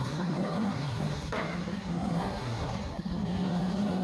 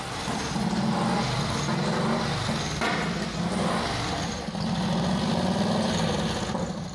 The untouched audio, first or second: second